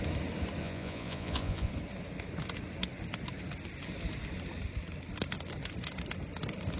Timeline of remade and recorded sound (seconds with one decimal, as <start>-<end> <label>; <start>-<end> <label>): 0.0-0.6 recorded; 0.6-1.7 remade; 1.7-6.8 recorded